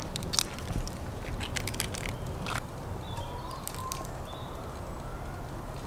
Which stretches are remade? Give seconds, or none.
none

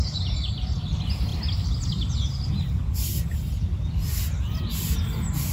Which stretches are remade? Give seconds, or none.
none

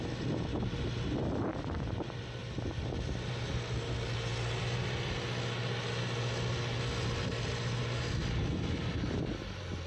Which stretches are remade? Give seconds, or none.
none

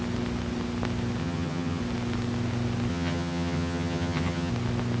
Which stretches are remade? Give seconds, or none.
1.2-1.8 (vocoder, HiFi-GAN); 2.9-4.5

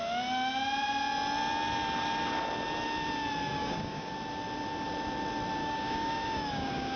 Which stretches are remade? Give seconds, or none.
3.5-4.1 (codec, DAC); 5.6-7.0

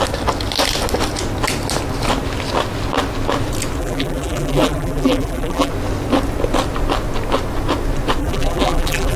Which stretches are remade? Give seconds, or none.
3.8-5.7 (vocoder, BigVGAN v2); 8.2-9.2